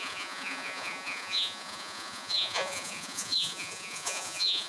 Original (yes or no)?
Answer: no